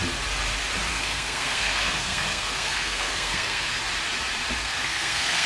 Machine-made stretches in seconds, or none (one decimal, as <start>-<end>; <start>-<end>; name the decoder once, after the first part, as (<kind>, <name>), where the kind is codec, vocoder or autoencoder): 0.9-3.8 (codec, SNAC); 4.6-5.5